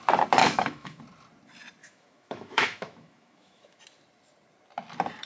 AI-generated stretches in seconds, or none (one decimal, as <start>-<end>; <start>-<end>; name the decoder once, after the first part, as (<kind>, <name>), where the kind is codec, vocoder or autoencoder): 0.4-1.0 (autoencoder, DAC-VAE); 1.8-3.8